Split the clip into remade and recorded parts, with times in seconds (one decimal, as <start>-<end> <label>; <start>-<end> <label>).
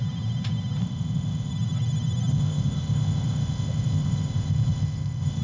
0.0-0.8 recorded; 0.8-1.5 remade; 1.5-2.3 recorded; 2.3-5.4 remade